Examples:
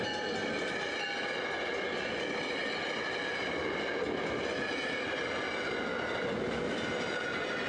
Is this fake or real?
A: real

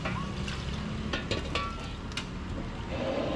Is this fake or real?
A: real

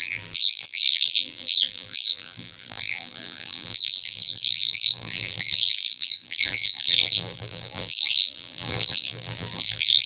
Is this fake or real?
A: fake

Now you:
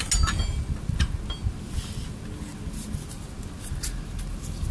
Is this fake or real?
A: real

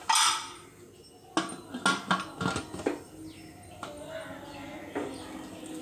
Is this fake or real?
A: real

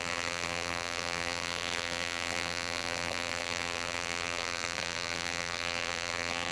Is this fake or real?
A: fake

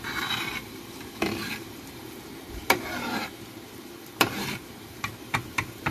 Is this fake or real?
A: fake